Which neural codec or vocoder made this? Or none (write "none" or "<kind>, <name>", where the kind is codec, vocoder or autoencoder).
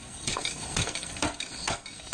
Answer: codec, SNAC